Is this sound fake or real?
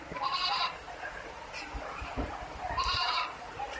fake